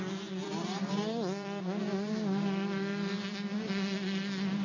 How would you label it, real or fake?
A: fake